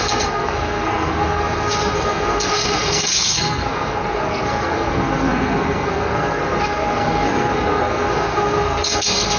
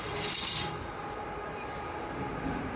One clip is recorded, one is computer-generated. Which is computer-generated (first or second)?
first